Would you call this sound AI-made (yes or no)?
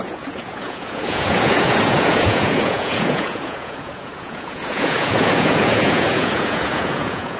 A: yes